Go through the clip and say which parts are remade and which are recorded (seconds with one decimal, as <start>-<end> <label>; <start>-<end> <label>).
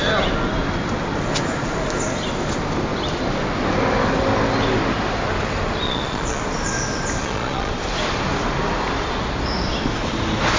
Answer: 0.0-5.8 recorded; 5.8-6.4 remade; 6.4-7.2 recorded; 7.2-7.7 remade; 7.7-10.6 recorded